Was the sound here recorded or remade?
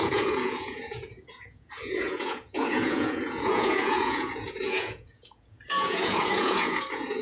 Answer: remade